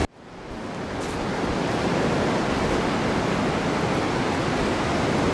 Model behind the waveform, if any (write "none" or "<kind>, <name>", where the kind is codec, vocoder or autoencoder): none